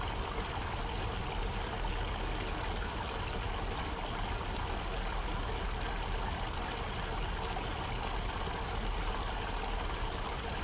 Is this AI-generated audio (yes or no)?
no